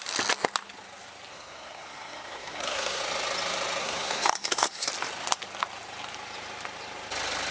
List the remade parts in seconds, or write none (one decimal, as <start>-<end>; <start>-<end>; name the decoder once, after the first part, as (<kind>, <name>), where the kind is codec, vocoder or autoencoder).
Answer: 1.3-3.0 (codec, SNAC); 3.8-4.9